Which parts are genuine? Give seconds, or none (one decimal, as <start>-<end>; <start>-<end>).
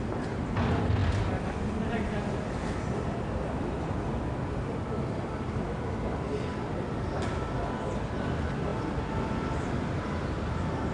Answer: 0.0-10.9